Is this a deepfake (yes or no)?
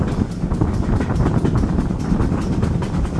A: no